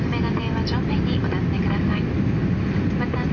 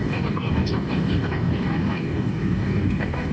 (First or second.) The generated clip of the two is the second